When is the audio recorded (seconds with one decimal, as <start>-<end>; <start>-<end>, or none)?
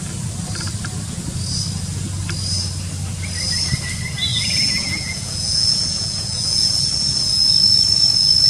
0.0-4.3; 6.8-8.5